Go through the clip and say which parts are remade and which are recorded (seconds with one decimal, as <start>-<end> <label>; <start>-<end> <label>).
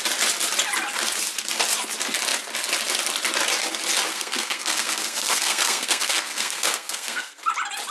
0.0-4.1 recorded; 4.1-7.4 remade; 7.4-7.9 recorded